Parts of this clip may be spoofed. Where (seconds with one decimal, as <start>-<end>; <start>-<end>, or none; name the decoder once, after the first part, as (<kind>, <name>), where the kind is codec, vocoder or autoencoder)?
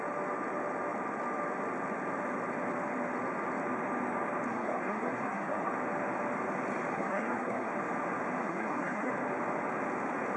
4.5-5.7 (codec, SNAC); 6.9-7.7; 8.4-9.1